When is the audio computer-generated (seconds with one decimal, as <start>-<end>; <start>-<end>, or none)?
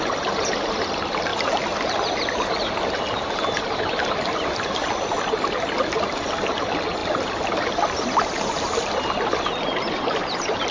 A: none